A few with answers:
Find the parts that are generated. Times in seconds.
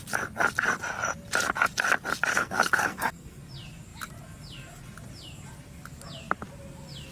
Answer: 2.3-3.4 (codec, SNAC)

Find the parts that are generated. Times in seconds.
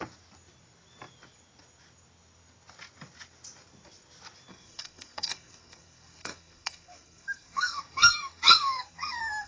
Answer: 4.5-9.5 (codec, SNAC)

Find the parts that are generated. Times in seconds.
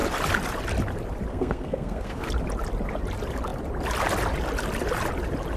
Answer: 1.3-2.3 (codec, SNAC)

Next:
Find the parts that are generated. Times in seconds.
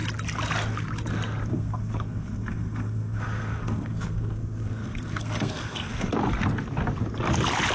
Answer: 1.5-6.1 (codec, SNAC)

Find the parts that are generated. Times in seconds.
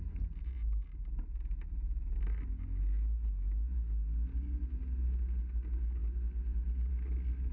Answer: none